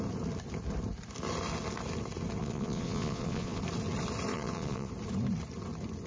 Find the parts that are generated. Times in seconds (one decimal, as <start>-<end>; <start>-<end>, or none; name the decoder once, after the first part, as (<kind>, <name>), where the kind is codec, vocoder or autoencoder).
2.4-3.6 (vocoder, Vocos); 4.3-4.9